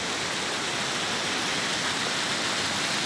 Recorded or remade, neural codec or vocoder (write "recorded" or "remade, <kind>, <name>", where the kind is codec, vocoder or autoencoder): recorded